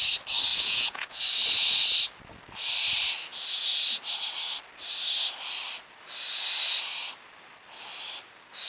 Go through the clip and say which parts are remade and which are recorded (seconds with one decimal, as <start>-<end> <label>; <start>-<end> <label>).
0.0-0.5 recorded; 0.5-1.2 remade; 1.2-8.7 recorded